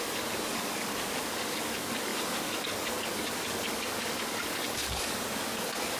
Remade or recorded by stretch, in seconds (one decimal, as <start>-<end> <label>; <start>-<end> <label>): 0.0-6.0 remade